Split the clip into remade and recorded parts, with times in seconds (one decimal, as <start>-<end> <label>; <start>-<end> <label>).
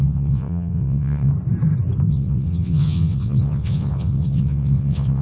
0.0-1.3 remade; 1.3-2.1 recorded; 2.1-5.2 remade